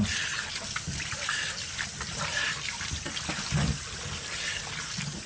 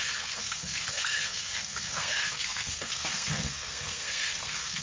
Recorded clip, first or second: first